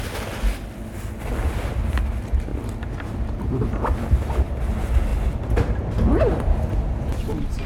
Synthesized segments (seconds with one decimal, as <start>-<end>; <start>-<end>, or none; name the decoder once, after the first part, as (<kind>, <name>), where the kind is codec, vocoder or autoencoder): 2.5-3.5 (vocoder, BigVGAN v2); 5.1-5.9